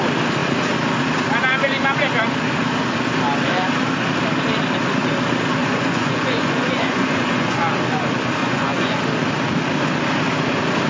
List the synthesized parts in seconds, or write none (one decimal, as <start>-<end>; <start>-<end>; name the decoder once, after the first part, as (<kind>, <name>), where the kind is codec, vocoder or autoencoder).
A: 5.6-7.6 (vocoder, Vocos); 8.4-9.0